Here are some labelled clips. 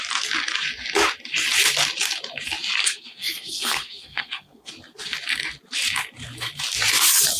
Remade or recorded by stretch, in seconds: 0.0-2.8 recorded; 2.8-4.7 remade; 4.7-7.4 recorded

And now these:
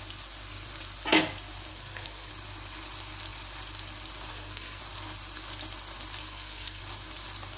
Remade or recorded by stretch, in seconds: 0.0-1.7 recorded; 1.7-2.3 remade; 2.3-4.3 recorded; 4.3-4.8 remade; 4.8-6.2 recorded; 6.2-6.8 remade; 6.8-7.6 recorded

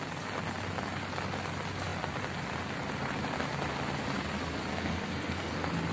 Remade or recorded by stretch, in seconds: 0.0-4.7 recorded; 4.7-5.5 remade; 5.5-5.9 recorded

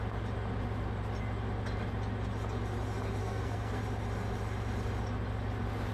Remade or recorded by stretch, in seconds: 0.0-3.2 recorded; 3.2-3.8 remade; 3.8-5.9 recorded

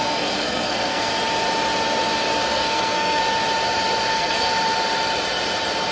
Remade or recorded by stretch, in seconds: 0.0-1.1 remade; 1.1-2.5 recorded; 2.5-3.2 remade; 3.2-4.1 recorded; 4.1-4.5 remade; 4.5-5.9 recorded